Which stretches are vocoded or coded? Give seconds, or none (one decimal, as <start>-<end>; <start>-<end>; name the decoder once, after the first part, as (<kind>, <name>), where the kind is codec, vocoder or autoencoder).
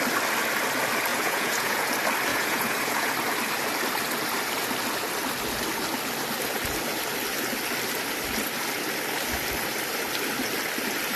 1.1-1.9 (vocoder, Vocos); 2.3-3.1